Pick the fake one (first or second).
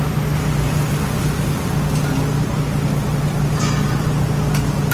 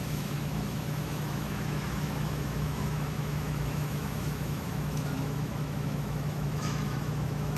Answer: second